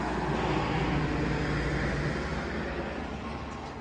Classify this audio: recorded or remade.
recorded